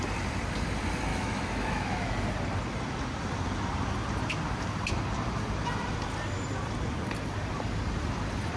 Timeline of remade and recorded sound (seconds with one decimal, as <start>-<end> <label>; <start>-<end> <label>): 0.0-1.1 recorded; 1.1-2.1 remade; 2.1-8.6 recorded